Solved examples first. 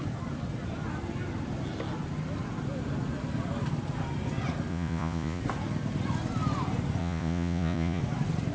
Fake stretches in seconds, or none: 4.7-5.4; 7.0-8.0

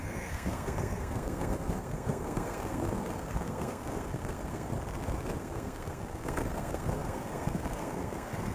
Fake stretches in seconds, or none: 0.0-4.7; 5.4-8.5

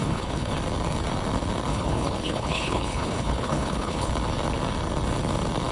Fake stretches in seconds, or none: 0.0-0.5; 1.7-4.1